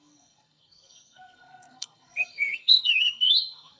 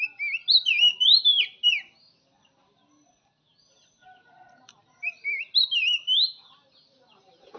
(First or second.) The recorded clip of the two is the second